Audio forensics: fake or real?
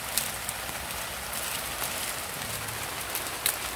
real